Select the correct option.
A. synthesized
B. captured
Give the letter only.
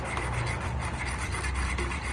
B